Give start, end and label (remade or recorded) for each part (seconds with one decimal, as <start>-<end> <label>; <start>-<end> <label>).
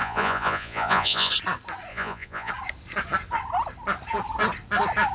0.0-1.3 remade; 1.3-1.9 recorded; 1.9-2.5 remade; 2.5-5.1 recorded